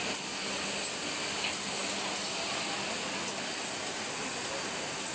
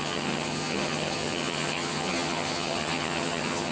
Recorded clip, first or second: first